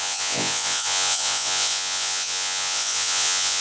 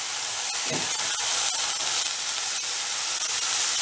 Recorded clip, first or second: second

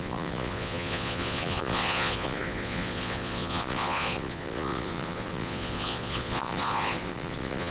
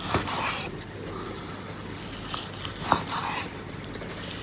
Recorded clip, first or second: second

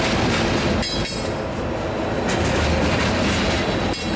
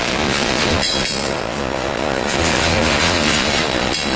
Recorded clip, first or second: first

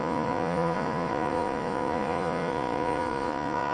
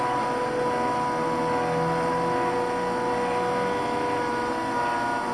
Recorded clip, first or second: second